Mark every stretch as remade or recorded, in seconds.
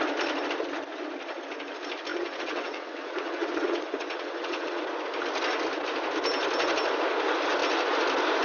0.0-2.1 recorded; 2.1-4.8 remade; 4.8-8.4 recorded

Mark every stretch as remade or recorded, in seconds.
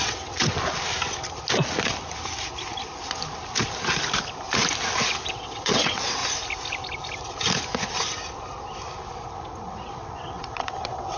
0.0-0.5 remade; 0.5-5.3 recorded; 5.3-6.2 remade; 6.2-9.1 recorded; 9.1-11.2 remade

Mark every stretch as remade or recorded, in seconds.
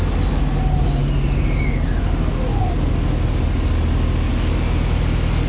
0.0-5.5 recorded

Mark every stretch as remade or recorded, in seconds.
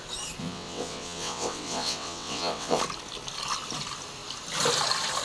0.0-0.4 recorded; 0.4-2.8 remade; 2.8-5.2 recorded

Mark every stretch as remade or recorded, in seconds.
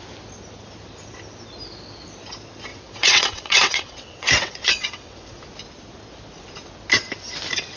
0.0-2.7 recorded; 2.7-5.4 remade; 5.4-7.8 recorded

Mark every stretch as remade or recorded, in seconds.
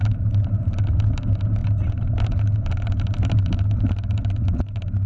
0.0-5.1 recorded